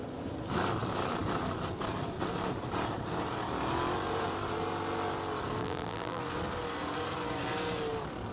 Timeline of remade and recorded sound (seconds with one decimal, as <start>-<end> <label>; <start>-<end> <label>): 0.0-5.6 recorded; 5.6-6.2 remade; 6.2-8.3 recorded